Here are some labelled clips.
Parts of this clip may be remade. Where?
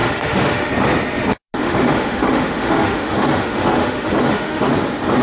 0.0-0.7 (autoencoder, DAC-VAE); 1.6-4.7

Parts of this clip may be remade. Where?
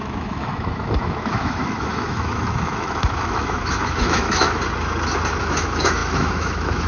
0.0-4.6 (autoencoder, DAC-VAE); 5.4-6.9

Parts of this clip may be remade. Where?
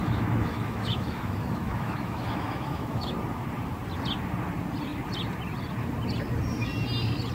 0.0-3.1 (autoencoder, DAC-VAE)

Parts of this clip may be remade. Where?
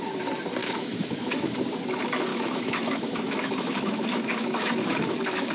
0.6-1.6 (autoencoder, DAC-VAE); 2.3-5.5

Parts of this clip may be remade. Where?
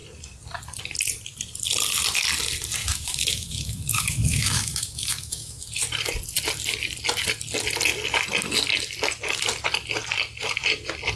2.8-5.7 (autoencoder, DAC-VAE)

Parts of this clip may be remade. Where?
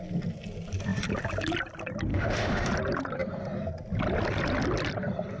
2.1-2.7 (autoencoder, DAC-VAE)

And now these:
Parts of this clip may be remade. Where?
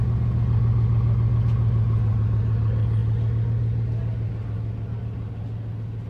none